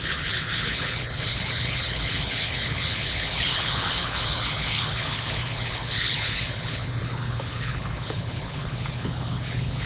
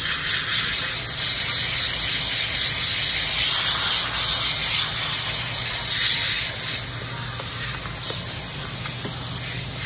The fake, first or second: first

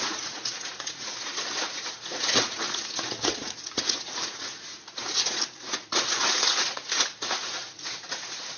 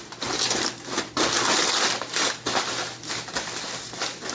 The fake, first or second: first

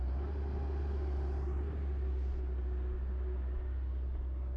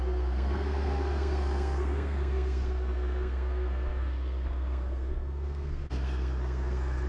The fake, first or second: second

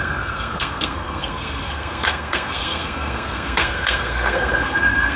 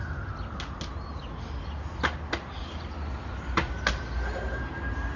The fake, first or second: first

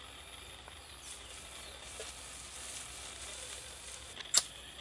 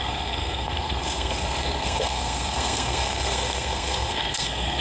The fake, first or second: second